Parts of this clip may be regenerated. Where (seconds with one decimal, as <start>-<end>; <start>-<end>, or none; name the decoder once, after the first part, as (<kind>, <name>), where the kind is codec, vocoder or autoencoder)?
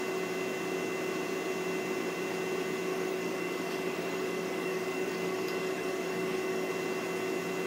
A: 2.9-6.7 (codec, DAC)